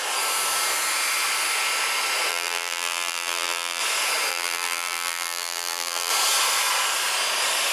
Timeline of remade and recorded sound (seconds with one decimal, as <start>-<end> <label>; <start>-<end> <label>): 0.0-2.3 recorded; 2.3-3.8 remade; 3.8-4.3 recorded; 4.3-6.1 remade; 6.1-7.7 recorded